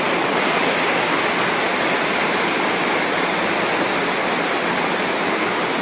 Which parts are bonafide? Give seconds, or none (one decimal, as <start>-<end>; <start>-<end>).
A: 0.0-5.8